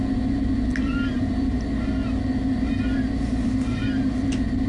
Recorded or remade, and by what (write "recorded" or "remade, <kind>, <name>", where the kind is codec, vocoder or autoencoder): recorded